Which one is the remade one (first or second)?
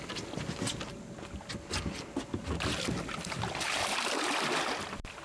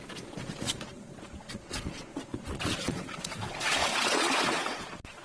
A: second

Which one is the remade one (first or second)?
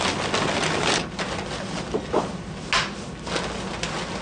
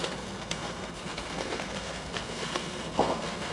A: second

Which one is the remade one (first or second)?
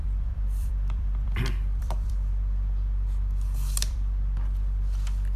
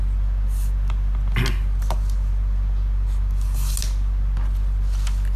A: first